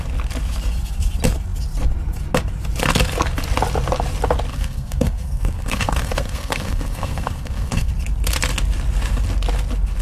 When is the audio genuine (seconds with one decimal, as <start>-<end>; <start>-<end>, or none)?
0.0-4.5; 7.9-10.0